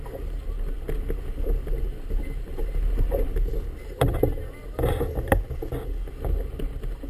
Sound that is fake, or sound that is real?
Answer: real